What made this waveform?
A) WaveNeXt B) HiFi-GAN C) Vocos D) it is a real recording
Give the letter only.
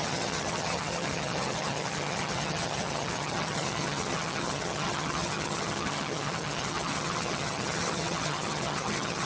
B